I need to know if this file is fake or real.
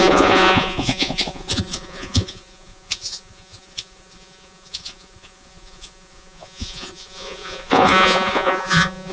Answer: fake